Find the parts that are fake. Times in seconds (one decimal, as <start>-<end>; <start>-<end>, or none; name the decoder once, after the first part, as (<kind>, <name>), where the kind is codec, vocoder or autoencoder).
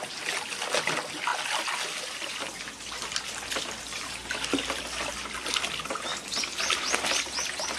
none